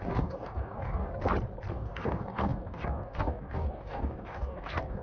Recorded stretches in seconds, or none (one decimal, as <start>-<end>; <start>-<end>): 1.1-1.7